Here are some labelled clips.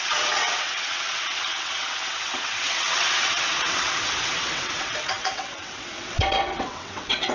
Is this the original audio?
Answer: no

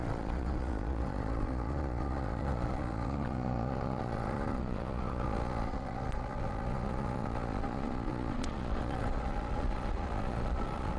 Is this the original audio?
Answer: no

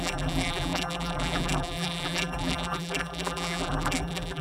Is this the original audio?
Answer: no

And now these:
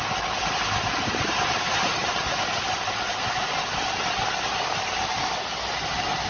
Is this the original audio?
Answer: yes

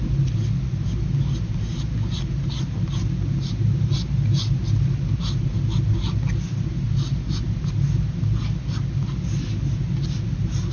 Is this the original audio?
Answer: yes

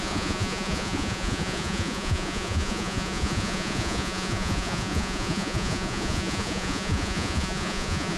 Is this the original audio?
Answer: no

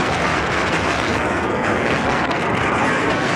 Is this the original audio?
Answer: no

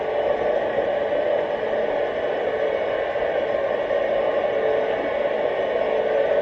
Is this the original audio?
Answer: yes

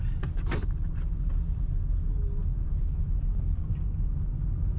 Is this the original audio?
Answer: yes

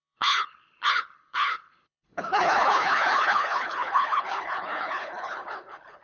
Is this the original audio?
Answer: no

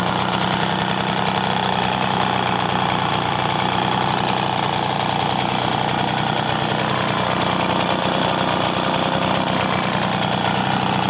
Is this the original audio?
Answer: yes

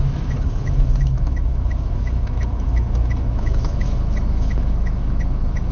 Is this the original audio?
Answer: no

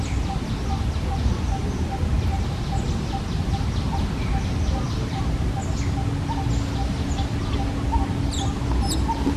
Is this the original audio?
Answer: yes